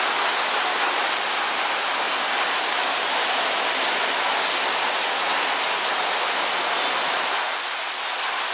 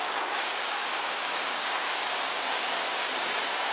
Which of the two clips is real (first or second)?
first